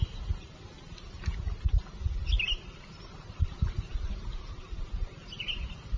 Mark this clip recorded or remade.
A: recorded